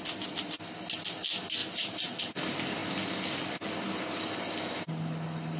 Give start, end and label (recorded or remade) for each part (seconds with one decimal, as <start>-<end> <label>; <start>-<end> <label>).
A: 0.0-1.6 recorded; 1.6-2.2 remade; 2.2-5.6 recorded